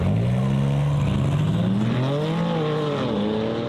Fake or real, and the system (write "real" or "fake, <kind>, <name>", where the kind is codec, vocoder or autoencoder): real